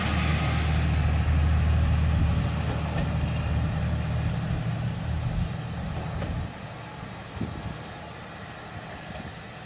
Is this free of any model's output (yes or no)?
yes